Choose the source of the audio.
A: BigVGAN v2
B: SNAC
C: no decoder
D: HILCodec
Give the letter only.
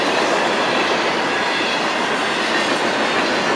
C